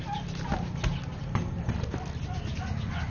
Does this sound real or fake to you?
real